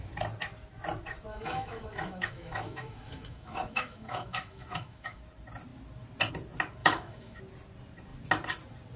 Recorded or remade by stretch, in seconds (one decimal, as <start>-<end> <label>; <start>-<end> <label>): 0.0-1.3 recorded; 1.3-5.2 remade; 5.2-6.8 recorded; 6.8-7.4 remade; 7.4-9.0 recorded